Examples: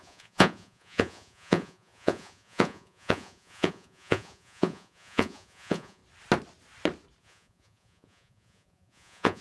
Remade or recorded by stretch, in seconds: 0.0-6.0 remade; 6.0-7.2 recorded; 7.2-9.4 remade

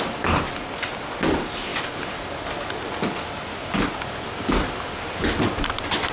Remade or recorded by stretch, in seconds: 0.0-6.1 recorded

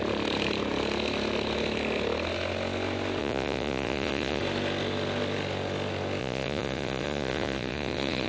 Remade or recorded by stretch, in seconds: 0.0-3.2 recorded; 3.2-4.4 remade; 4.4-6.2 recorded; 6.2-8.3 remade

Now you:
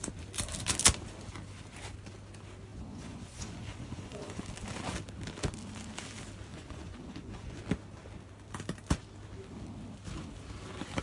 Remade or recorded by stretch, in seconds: 0.0-2.7 recorded; 2.7-4.4 remade; 4.4-6.5 recorded; 6.5-7.6 remade; 7.6-11.0 recorded

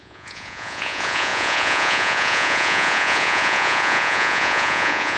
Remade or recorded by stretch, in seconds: 0.0-5.2 remade

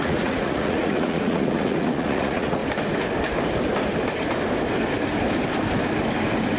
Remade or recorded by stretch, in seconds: 0.0-2.6 remade; 2.6-6.6 recorded

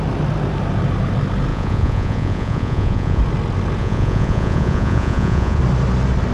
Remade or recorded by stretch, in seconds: 0.0-1.5 recorded; 1.5-3.2 remade; 3.2-3.8 recorded; 3.8-5.6 remade; 5.6-6.3 recorded